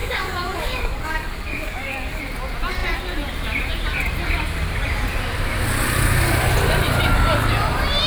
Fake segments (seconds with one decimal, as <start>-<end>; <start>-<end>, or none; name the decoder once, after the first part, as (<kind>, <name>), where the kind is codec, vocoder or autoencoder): 0.0-2.2 (codec, DAC)